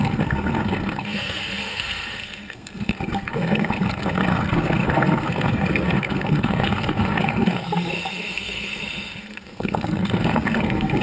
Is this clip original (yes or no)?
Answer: no